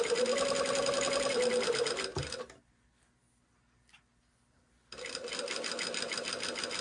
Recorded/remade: recorded